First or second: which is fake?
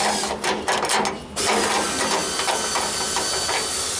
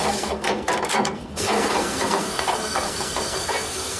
second